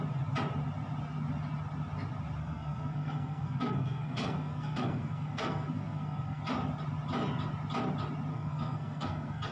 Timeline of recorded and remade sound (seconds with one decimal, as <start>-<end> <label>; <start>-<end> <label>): 0.0-2.4 recorded; 2.4-6.4 remade; 6.4-8.3 recorded; 8.3-9.5 remade